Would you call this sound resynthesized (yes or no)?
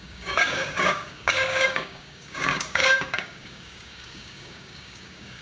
yes